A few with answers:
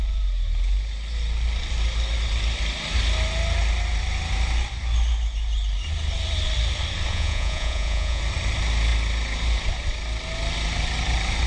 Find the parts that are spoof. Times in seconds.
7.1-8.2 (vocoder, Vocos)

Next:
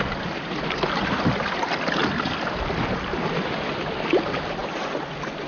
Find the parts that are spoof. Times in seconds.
none

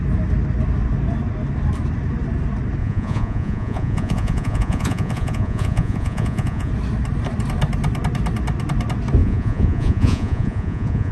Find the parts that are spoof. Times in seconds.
2.8-6.7 (vocoder, Vocos); 9.2-11.1

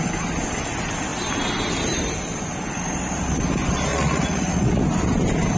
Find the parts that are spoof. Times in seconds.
3.9-4.8 (vocoder, Vocos)

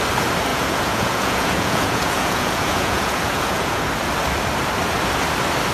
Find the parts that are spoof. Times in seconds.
0.5-3.9 (vocoder, Vocos)